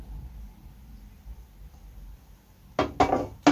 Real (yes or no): yes